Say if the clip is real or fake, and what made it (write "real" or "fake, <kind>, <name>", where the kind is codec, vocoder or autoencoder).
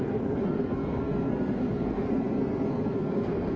fake, codec, SNAC